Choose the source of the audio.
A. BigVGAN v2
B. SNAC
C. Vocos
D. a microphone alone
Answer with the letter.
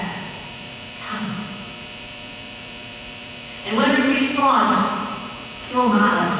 C